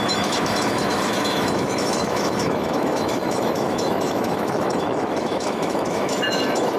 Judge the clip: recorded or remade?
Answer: remade